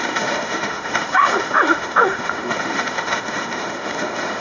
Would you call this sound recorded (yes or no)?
no